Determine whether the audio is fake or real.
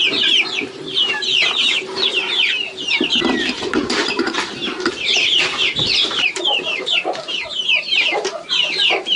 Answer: fake